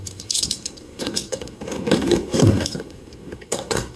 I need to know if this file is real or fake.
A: fake